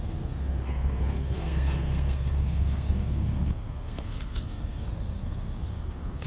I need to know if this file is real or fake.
fake